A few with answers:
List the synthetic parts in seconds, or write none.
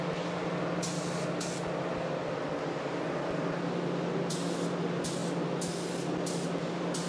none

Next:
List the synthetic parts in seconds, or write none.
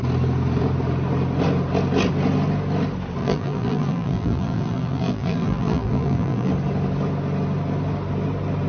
3.2-6.5 (vocoder, BigVGAN v2)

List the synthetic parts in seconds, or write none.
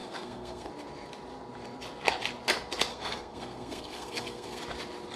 0.0-0.7 (codec, SNAC); 2.9-4.6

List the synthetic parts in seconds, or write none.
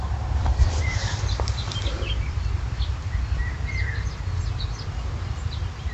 0.5-3.4 (vocoder, BigVGAN v2)